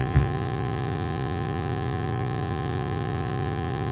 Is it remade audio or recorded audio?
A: remade